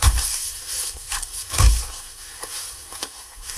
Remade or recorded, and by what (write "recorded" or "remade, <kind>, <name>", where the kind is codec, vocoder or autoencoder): remade, codec, SNAC